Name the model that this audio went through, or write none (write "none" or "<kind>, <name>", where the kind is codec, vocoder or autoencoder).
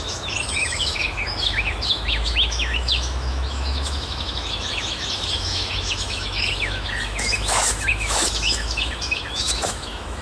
autoencoder, DAC-VAE